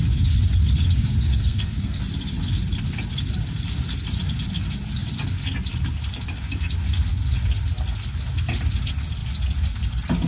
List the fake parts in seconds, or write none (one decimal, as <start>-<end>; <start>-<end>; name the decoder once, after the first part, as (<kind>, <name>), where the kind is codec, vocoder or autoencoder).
1.3-2.0 (codec, SNAC)